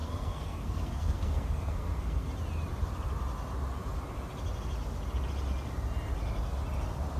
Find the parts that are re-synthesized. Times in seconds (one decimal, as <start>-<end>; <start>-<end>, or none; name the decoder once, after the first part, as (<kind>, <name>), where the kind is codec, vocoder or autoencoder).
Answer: 0.0-2.3 (codec, SNAC)